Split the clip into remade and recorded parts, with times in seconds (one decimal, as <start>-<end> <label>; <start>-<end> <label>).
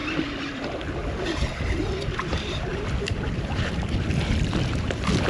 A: 0.0-5.3 recorded